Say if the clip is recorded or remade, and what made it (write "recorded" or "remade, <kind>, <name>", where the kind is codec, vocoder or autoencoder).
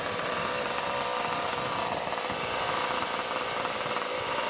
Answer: remade, vocoder, BigVGAN v2